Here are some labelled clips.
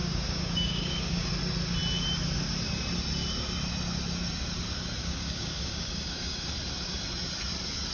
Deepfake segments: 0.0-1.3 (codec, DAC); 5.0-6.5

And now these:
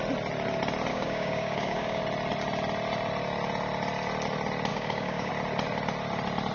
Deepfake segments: 0.9-2.0 (codec, DAC); 4.7-5.3

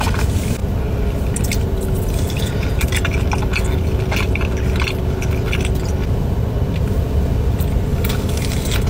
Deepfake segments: 7.9-8.4 (codec, DAC)